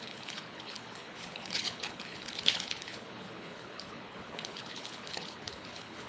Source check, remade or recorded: remade